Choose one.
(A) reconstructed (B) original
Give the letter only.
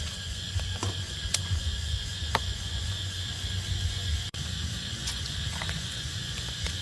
A